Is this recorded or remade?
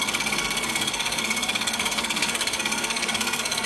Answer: remade